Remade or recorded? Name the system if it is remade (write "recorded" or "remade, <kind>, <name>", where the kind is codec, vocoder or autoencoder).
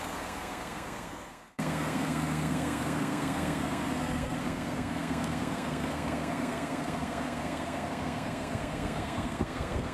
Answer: remade, codec, SNAC